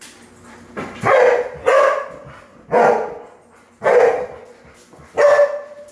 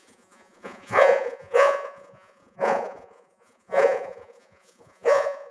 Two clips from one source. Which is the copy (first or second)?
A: second